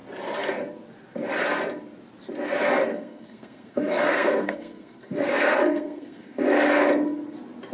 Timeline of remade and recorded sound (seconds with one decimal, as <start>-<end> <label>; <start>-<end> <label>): 0.0-2.9 recorded; 2.9-6.4 remade; 6.4-7.7 recorded

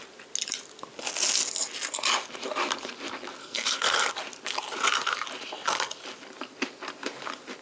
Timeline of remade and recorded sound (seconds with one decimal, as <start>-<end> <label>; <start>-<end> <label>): 0.0-3.4 recorded; 3.4-4.1 remade; 4.1-7.6 recorded

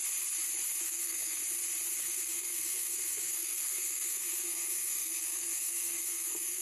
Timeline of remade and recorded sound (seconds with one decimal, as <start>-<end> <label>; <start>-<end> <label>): 0.0-0.8 recorded; 0.8-1.4 remade; 1.4-2.0 recorded; 2.0-6.6 remade

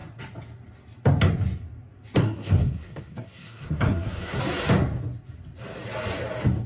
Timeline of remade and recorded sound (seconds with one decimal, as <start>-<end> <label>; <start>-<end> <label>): 0.0-2.2 recorded; 2.2-4.4 remade; 4.4-6.7 recorded

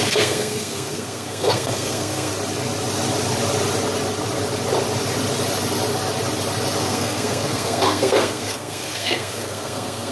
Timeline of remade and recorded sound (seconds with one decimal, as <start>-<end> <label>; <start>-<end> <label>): 0.0-2.3 remade; 2.3-6.8 recorded; 6.8-10.1 remade

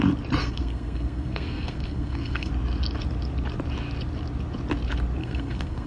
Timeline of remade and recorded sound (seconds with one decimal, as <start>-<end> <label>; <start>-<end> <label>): 0.0-0.4 recorded; 0.4-2.5 remade; 2.5-5.2 recorded; 5.2-5.9 remade